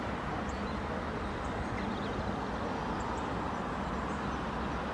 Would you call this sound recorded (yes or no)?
yes